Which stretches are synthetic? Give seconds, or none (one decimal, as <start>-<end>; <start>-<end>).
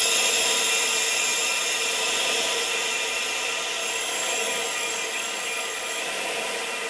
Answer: 3.8-6.0